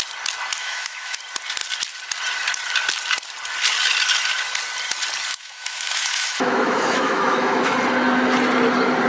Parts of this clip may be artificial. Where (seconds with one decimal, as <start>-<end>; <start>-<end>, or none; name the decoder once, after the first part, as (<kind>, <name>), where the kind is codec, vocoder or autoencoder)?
0.6-1.2 (autoencoder, DAC-VAE); 5.3-7.7